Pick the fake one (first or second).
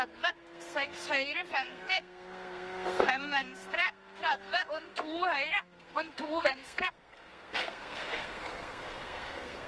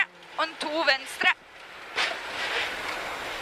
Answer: first